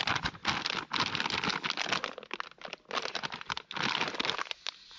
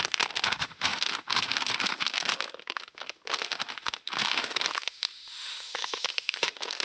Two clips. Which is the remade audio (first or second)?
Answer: second